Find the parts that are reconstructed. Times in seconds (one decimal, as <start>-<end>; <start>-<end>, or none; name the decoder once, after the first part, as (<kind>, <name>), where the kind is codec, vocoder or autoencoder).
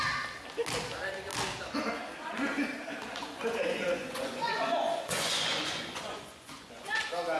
3.2-7.0 (vocoder, Vocos)